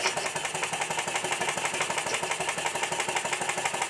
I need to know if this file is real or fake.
real